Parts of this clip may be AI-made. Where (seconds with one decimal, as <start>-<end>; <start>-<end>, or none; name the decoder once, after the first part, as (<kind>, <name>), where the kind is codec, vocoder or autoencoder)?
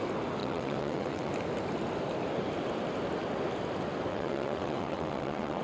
0.4-1.3 (vocoder, WaveNeXt); 4.1-5.6